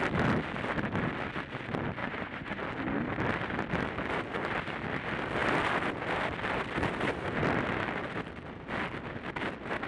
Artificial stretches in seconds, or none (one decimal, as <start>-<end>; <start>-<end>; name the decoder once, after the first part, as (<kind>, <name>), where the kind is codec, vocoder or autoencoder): 2.0-2.6 (vocoder, Vocos)